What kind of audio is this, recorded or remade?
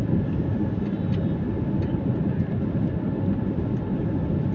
recorded